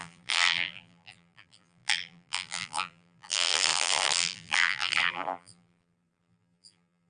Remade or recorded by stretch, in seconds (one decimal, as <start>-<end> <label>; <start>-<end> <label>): 0.0-7.1 remade